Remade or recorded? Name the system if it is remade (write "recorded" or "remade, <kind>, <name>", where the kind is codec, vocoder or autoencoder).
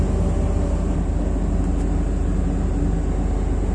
recorded